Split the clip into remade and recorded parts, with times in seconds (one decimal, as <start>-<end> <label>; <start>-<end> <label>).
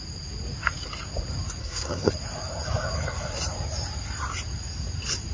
0.0-1.6 recorded; 1.6-2.1 remade; 2.1-5.3 recorded